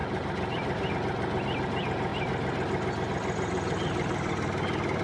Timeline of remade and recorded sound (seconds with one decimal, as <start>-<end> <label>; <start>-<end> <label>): 0.0-0.9 remade; 0.9-5.0 recorded